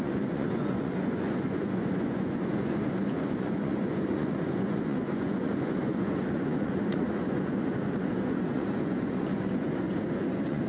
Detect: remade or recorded remade